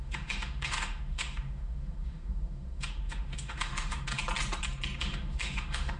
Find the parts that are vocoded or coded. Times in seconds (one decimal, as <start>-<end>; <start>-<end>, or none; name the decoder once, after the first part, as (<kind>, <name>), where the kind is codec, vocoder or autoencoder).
0.0-4.2 (autoencoder, DAC-VAE); 5.0-6.0